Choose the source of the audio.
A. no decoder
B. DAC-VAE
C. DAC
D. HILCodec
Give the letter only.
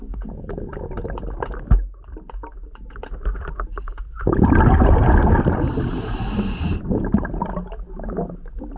A